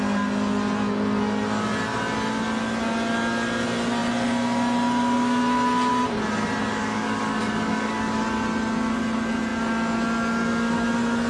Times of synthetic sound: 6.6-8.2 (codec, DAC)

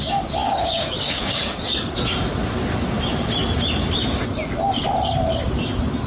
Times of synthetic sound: 0.4-1.4 (codec, DAC)